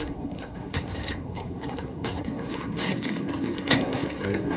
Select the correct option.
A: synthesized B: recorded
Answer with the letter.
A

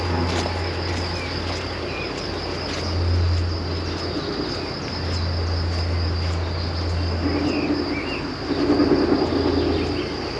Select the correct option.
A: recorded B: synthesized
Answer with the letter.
A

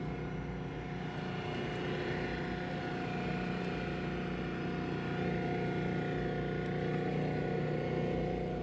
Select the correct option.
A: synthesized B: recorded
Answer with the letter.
B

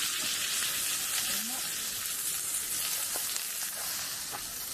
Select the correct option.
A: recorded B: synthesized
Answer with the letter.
A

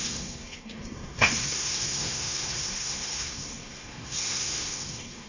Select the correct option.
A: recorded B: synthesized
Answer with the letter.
B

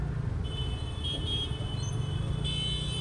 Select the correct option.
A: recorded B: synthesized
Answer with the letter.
A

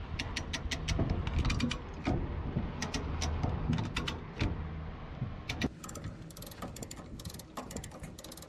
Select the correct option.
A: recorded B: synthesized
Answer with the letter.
A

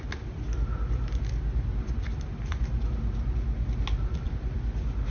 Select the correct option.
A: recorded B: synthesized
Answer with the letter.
A